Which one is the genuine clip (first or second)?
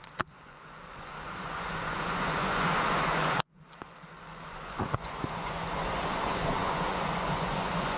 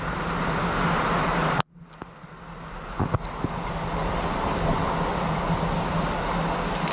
second